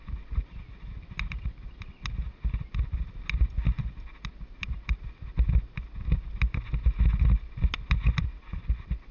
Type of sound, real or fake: real